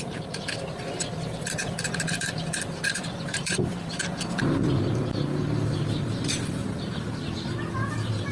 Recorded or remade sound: remade